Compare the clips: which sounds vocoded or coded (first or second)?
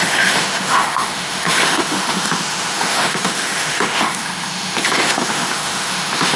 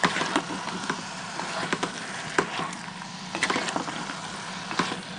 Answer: first